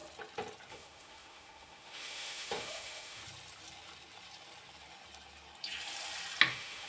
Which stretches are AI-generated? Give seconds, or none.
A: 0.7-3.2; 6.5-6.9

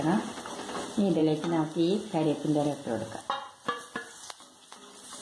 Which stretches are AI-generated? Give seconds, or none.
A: none

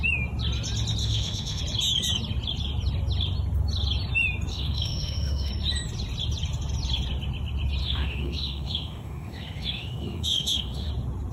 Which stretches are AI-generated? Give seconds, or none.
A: 1.0-1.6; 4.5-5.5; 7.8-10.9

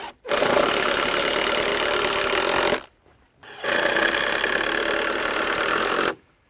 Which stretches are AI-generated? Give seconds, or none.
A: 0.0-1.7; 5.2-6.5

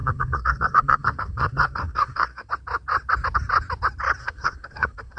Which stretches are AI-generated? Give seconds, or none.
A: 0.0-2.5; 4.2-5.2